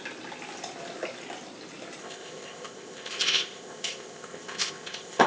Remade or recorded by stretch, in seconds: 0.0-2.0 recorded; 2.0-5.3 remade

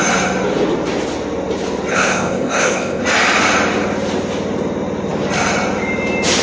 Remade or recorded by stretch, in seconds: 0.0-1.9 recorded; 1.9-3.0 remade; 3.0-6.4 recorded

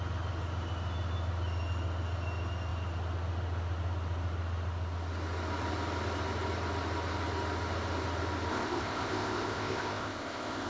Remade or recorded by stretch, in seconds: 0.0-8.5 recorded; 8.5-10.7 remade

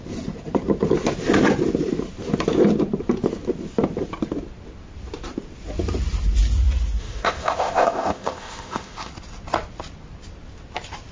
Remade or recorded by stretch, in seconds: 0.0-7.0 recorded; 7.0-9.1 remade; 9.1-11.1 recorded